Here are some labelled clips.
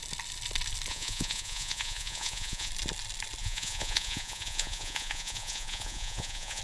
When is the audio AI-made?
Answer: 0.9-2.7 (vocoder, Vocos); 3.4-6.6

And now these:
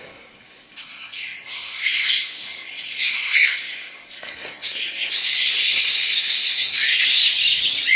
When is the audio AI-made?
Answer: 0.0-7.2 (codec, SNAC)

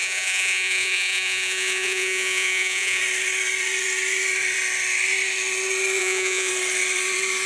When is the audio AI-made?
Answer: 0.0-3.0 (vocoder, Vocos); 6.0-6.5

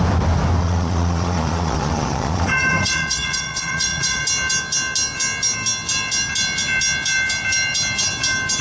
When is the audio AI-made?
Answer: 0.6-4.2 (vocoder, Vocos)

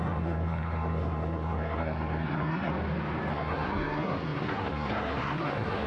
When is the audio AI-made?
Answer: 0.0-2.7 (codec, SNAC); 3.3-5.9